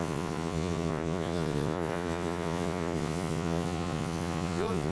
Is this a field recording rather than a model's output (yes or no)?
no